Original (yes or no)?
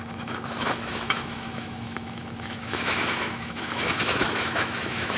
no